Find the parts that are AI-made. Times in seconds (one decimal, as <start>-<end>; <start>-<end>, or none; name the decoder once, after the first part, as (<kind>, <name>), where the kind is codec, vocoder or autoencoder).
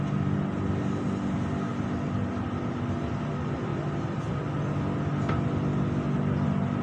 1.7-2.3 (vocoder, BigVGAN v2); 3.7-4.3